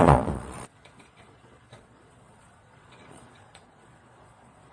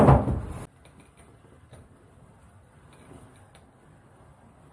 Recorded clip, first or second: second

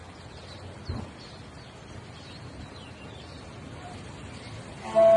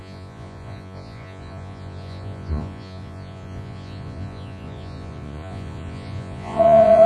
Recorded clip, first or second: first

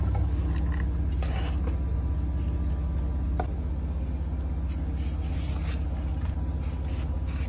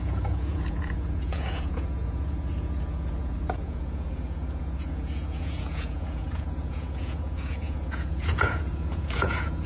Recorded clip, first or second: first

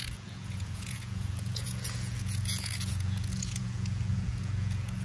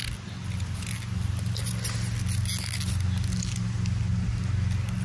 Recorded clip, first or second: second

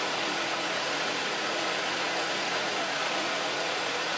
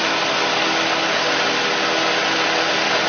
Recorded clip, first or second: second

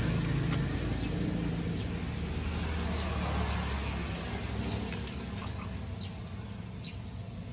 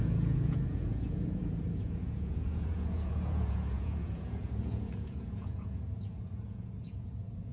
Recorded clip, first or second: first